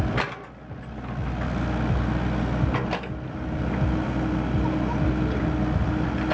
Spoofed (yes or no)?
no